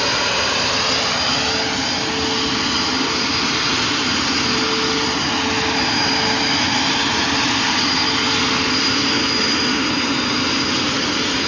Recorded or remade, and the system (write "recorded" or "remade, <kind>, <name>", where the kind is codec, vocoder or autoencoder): recorded